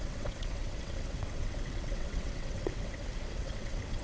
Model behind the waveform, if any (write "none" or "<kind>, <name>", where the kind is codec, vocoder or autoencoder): vocoder, WaveNeXt